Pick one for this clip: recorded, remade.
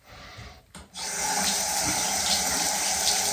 recorded